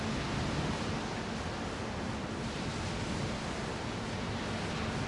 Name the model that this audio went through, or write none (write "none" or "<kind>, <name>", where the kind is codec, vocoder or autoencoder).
none